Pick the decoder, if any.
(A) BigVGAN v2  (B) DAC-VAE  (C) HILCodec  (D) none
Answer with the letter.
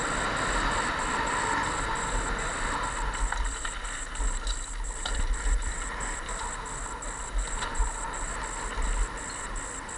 D